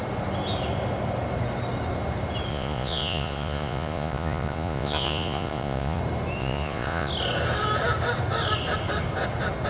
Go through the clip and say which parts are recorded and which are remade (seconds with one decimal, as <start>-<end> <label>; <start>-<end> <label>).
0.0-2.5 recorded; 2.5-6.0 remade; 6.0-6.4 recorded; 6.4-7.1 remade; 7.1-9.7 recorded